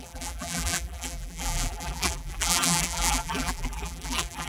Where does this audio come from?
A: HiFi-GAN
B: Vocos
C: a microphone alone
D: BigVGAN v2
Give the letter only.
D